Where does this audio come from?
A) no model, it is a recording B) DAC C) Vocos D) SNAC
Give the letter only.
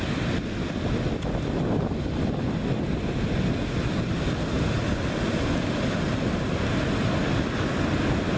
A